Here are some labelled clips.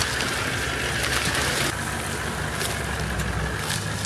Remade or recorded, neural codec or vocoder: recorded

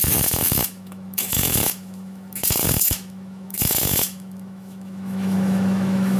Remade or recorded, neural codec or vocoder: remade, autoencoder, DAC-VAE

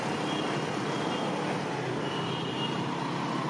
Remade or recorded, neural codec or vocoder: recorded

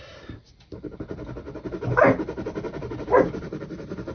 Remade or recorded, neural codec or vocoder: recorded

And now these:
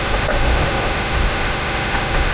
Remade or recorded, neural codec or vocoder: remade, autoencoder, DAC-VAE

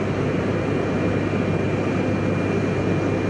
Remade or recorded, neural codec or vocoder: recorded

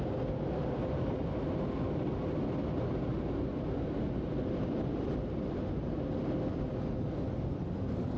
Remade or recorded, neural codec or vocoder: recorded